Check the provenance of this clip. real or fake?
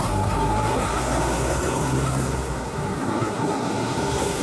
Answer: fake